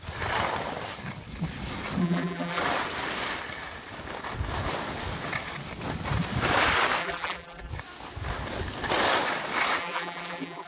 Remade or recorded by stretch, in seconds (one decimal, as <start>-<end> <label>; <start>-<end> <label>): 0.0-2.0 recorded; 2.0-2.6 remade; 2.6-7.0 recorded; 7.0-7.7 remade; 7.7-9.8 recorded; 9.8-10.7 remade